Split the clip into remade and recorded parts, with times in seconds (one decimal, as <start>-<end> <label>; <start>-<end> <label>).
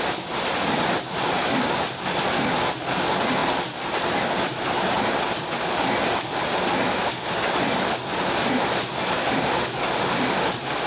0.0-10.9 recorded